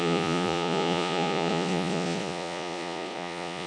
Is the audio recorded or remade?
remade